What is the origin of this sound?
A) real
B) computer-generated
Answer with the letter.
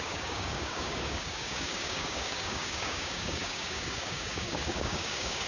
B